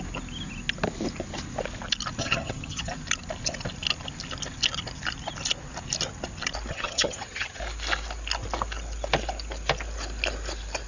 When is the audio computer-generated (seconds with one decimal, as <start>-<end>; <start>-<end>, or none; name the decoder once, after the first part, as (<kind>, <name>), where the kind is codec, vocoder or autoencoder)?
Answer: 2.2-2.9 (vocoder, HiFi-GAN); 6.7-7.6